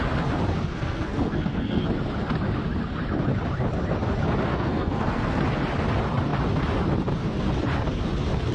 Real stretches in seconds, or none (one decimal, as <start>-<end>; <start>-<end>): 0.0-0.7; 1.8-4.5; 5.4-8.5